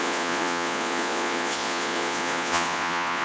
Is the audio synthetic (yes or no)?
yes